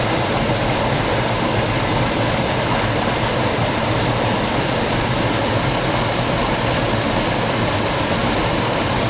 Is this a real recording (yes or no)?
yes